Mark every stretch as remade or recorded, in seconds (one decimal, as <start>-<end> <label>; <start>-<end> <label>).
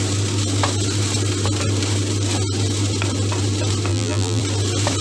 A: 0.0-3.9 recorded; 3.9-4.4 remade; 4.4-5.0 recorded